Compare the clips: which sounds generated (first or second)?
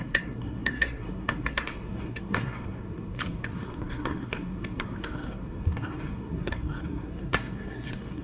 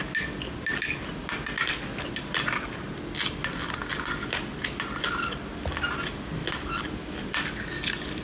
first